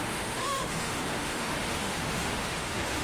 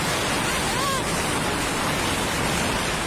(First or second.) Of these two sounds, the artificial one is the first